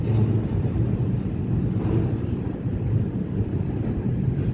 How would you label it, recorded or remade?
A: recorded